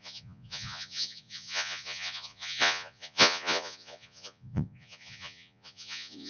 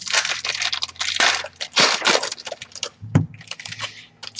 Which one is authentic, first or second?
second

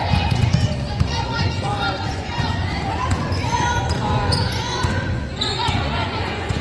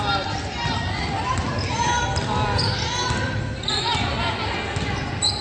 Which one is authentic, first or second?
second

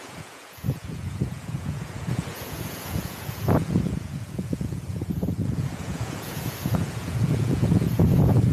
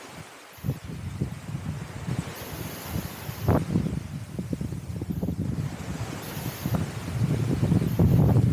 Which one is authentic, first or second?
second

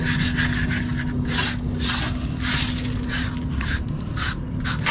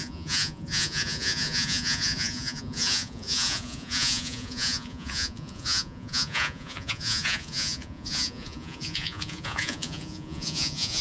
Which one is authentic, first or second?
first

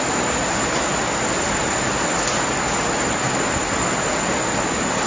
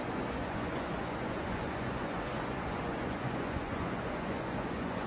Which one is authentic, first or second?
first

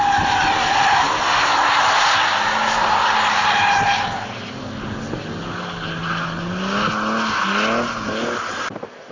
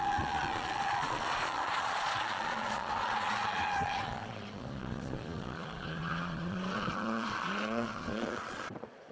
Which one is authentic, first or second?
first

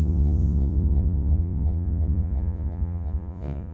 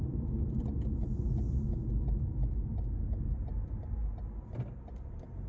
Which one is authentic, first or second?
second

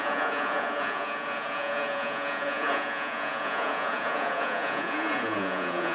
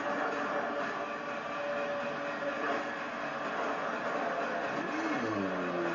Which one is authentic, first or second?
second